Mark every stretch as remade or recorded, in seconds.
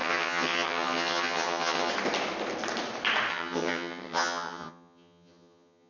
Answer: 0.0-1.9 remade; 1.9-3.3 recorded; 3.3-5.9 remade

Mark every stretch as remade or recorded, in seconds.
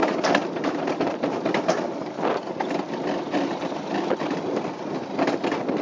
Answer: 0.0-2.2 remade; 2.2-5.8 recorded